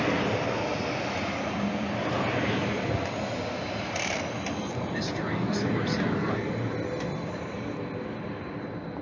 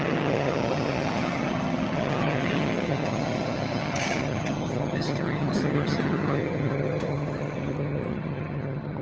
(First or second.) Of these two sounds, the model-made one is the second